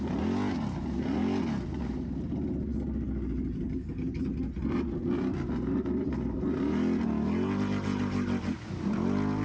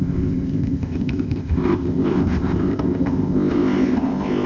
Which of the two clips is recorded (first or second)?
first